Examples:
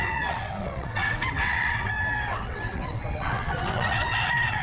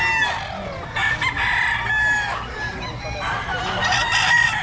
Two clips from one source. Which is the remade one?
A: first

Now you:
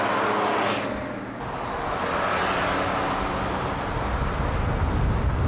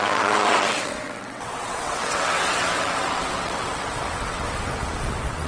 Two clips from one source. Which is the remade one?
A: second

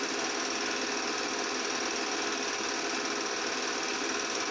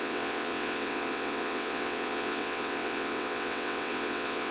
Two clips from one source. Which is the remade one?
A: second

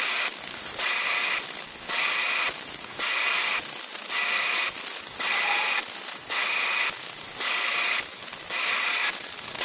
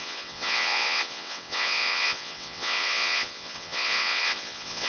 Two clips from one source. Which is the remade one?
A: second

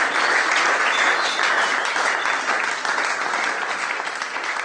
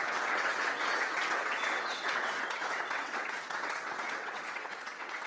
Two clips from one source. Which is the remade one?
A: second